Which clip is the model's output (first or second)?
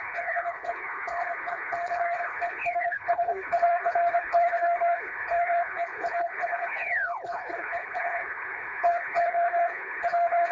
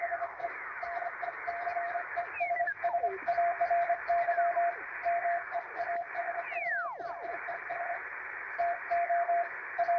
first